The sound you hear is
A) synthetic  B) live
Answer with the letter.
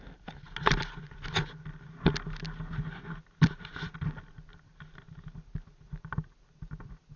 B